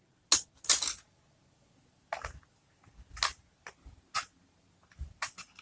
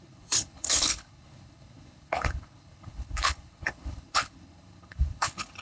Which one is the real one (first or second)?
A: first